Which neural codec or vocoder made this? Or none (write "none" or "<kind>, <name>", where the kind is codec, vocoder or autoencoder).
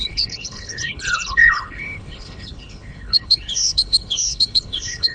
codec, HILCodec